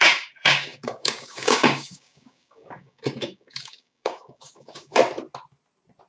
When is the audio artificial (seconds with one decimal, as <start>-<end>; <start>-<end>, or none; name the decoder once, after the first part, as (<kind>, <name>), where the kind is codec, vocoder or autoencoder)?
0.0-5.0 (codec, DAC)